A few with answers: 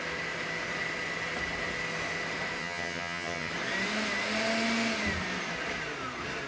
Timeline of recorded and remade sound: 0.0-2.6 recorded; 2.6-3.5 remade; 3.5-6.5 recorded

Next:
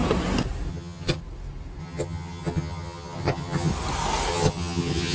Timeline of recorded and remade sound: 0.0-0.7 recorded; 0.7-1.2 remade; 1.2-1.8 recorded; 1.8-3.7 remade; 3.7-4.3 recorded; 4.3-5.1 remade